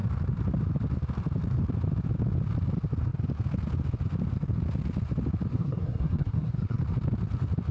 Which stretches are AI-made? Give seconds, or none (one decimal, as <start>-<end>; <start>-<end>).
5.5-6.8